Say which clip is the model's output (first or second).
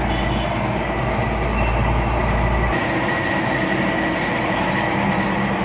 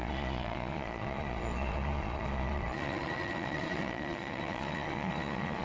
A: second